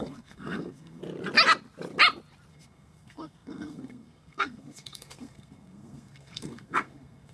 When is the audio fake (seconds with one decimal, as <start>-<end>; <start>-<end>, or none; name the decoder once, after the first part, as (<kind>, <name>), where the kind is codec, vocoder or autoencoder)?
0.0-1.0 (codec, SNAC); 2.5-7.3